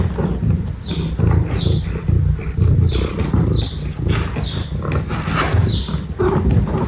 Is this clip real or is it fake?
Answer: real